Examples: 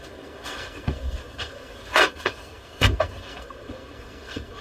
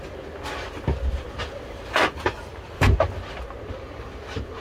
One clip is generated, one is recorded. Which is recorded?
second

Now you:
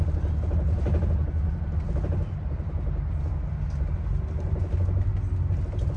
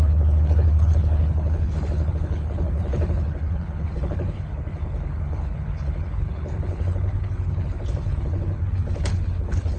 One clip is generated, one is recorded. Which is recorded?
first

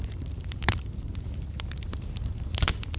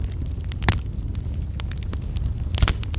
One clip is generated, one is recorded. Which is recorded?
second